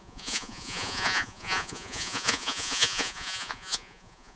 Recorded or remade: remade